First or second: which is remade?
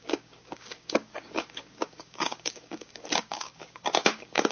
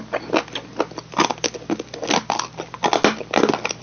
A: first